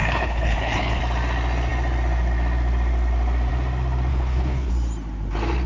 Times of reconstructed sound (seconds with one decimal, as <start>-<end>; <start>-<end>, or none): 0.0-1.0; 4.1-4.7